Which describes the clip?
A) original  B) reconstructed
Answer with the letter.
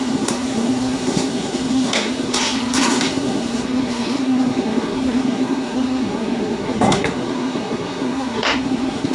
B